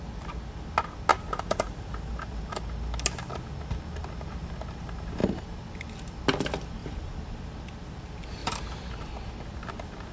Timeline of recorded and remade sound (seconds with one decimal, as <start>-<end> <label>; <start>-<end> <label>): 0.0-1.1 recorded; 1.1-2.5 remade; 2.5-6.8 recorded; 6.8-7.3 remade; 7.3-8.4 recorded; 8.4-9.1 remade; 9.1-10.1 recorded